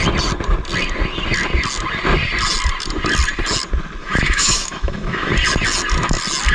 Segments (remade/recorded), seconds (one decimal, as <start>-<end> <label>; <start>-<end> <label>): 0.0-4.0 recorded; 4.0-5.3 remade; 5.3-6.5 recorded